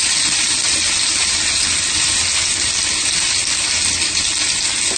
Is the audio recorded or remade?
recorded